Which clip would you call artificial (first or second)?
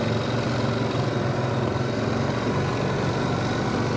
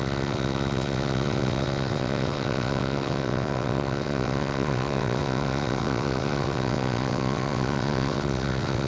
second